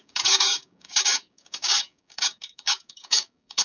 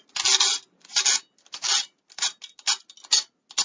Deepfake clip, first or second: first